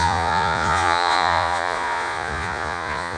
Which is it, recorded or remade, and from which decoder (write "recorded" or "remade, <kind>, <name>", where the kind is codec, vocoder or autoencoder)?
remade, vocoder, Vocos